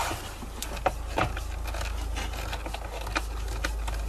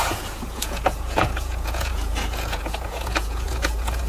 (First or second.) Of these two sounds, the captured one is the first